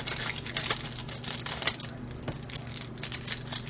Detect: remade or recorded recorded